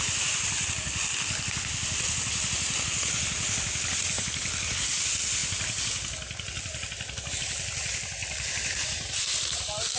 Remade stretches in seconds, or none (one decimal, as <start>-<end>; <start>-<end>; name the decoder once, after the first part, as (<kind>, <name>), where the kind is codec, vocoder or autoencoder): none